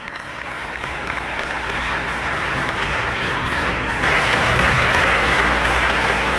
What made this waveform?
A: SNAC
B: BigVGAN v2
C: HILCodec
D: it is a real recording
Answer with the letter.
A